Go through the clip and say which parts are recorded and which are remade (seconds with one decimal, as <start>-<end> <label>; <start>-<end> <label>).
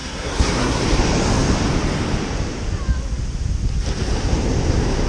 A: 0.0-0.8 remade; 0.8-5.1 recorded